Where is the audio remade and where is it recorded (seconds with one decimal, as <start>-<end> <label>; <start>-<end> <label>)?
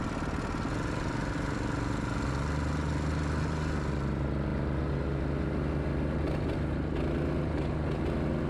0.0-8.5 recorded